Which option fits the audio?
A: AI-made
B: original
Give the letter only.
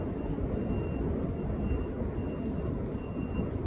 A